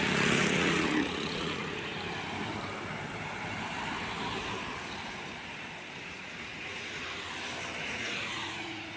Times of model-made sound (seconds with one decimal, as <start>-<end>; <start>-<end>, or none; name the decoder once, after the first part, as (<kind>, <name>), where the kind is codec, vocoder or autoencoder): 0.0-1.9 (vocoder, Vocos); 6.0-7.0; 7.8-9.0